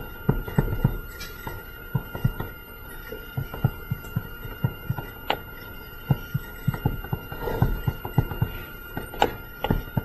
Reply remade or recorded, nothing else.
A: recorded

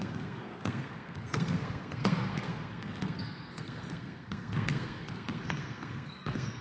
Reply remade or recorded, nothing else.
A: remade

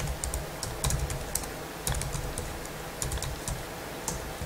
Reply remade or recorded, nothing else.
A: recorded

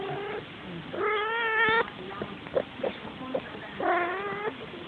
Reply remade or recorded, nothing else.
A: recorded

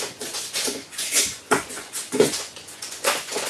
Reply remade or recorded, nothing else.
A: remade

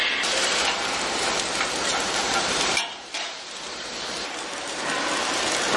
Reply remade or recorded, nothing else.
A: remade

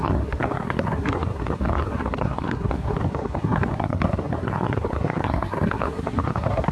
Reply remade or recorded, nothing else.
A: remade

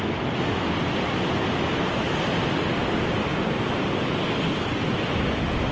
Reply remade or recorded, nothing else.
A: recorded